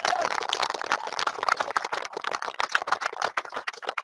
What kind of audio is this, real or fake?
real